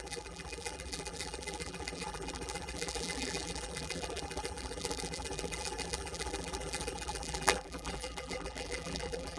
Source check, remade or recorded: remade